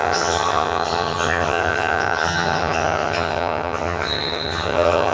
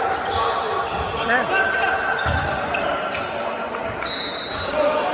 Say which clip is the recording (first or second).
second